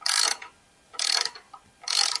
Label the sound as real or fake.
real